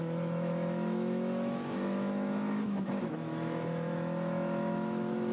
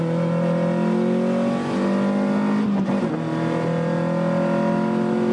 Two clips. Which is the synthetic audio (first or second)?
first